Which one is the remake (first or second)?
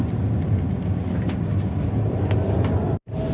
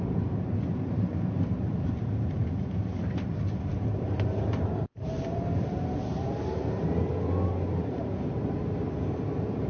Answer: second